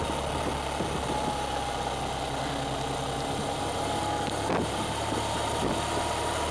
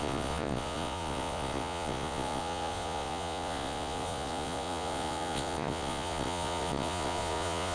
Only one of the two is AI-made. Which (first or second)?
second